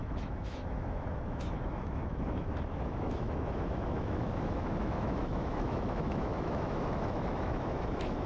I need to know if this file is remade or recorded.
remade